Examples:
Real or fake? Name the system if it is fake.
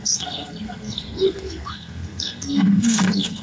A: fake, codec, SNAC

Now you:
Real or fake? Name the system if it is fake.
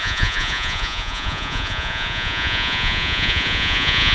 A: fake, vocoder, Vocos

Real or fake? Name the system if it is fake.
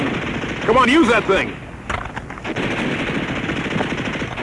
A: real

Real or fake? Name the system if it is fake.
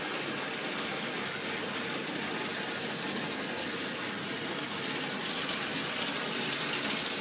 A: real